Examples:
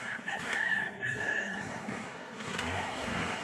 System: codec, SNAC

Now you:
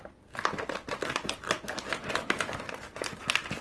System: none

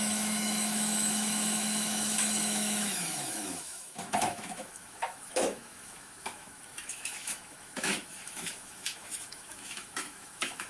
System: autoencoder, DAC-VAE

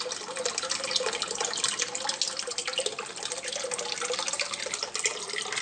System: none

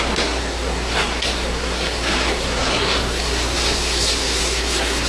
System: codec, SNAC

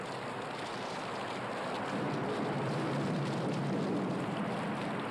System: none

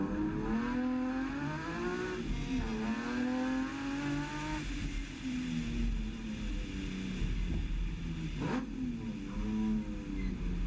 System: none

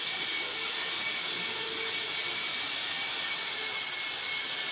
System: none